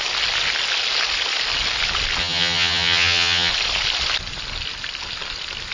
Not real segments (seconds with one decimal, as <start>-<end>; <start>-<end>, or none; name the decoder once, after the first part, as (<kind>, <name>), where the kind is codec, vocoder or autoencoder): 2.2-3.5 (vocoder, HiFi-GAN)